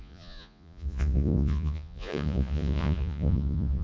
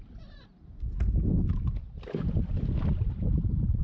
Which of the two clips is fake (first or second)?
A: first